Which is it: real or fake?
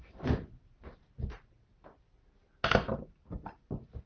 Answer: real